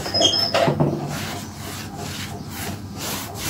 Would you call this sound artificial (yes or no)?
no